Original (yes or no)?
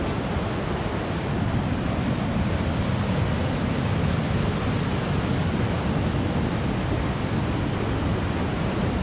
yes